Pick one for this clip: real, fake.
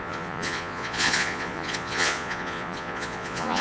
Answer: fake